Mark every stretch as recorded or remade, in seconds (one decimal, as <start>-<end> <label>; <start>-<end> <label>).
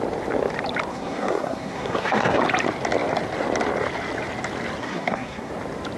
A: 0.0-0.9 recorded; 0.9-2.4 remade; 2.4-4.8 recorded; 4.8-5.5 remade; 5.5-6.0 recorded